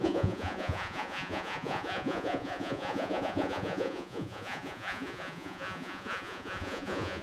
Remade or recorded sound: remade